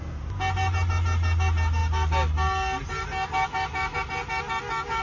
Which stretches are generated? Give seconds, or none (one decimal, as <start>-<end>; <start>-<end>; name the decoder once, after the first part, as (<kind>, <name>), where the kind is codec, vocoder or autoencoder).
none